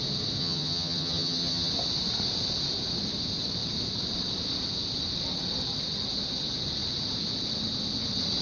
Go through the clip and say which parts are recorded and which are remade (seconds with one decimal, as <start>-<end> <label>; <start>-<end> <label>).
0.0-0.4 recorded; 0.4-1.7 remade; 1.7-8.4 recorded